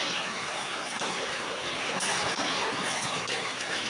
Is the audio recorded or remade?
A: remade